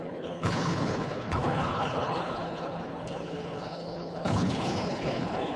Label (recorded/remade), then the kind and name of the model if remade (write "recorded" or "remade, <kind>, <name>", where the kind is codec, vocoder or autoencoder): remade, codec, HILCodec